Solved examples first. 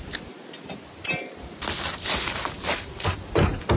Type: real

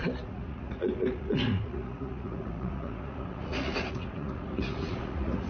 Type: fake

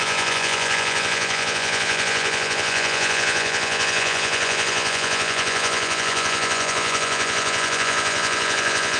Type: fake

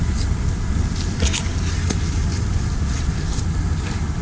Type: real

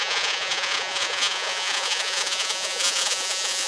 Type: fake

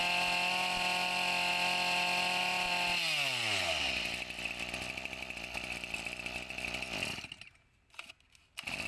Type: real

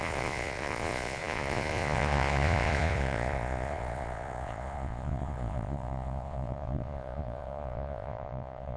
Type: fake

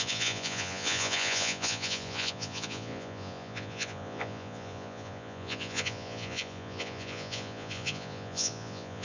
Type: fake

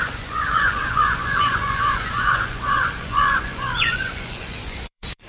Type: fake